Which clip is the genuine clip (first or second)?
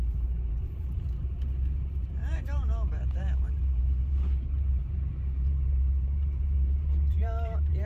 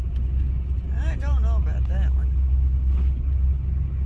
second